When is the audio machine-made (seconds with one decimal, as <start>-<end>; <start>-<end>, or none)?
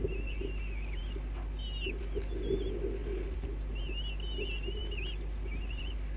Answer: none